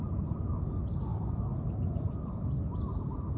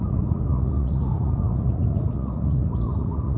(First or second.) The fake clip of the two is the second